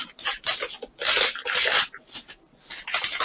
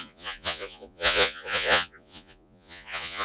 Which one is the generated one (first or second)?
second